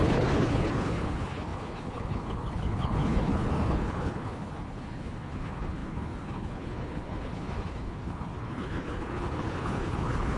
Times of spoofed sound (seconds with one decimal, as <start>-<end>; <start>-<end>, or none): 0.0-10.4